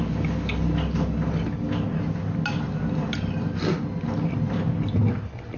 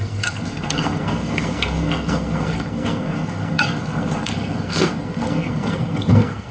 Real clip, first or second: first